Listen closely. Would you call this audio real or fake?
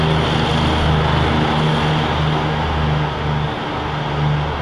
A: real